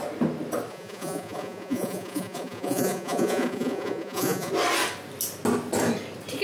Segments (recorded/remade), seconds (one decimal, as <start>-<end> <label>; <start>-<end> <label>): 0.0-0.7 recorded; 0.7-4.5 remade; 4.5-6.4 recorded